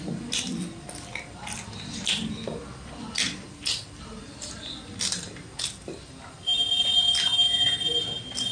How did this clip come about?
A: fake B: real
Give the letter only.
B